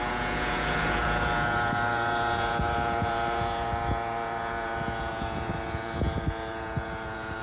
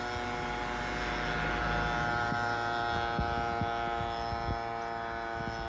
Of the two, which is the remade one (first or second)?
first